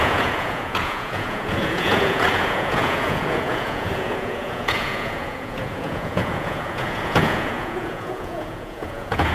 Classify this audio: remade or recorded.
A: remade